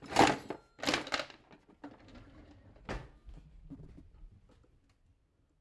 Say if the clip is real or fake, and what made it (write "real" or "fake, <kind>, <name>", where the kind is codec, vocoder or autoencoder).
real